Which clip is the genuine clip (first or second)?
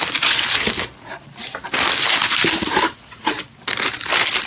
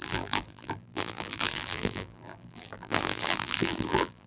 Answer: first